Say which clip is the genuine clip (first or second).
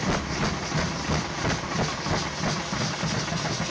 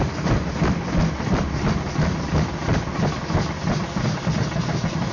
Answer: first